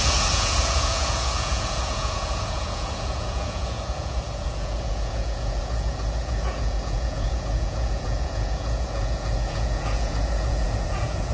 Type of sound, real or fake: fake